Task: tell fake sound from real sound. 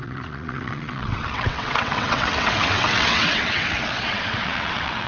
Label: fake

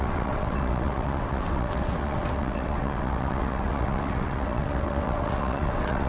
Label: fake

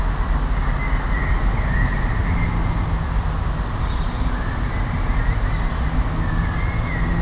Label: real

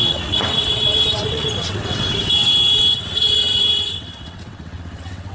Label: fake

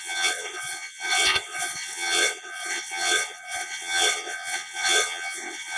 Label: fake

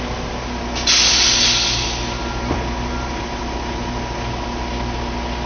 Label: real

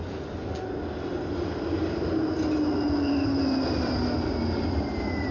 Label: real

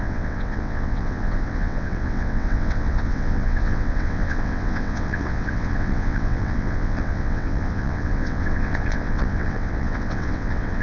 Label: fake